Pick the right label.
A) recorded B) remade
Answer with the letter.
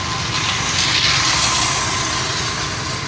A